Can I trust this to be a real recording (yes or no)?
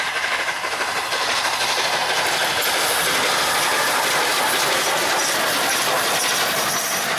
yes